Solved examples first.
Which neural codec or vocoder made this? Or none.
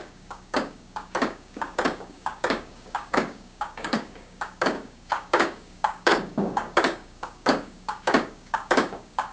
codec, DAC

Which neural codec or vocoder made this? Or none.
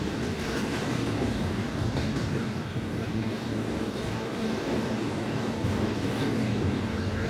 codec, DAC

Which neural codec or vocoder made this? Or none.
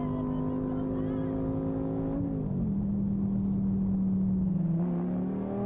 none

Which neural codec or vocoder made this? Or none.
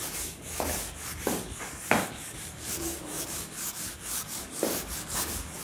codec, DAC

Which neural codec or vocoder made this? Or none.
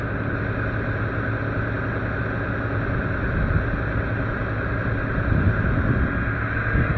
none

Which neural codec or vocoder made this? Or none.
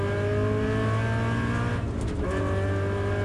none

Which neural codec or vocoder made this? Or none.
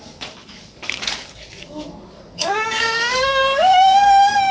codec, DAC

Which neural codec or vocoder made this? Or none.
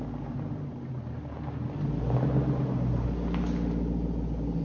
none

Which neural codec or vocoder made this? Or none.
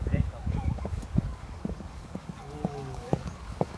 codec, DAC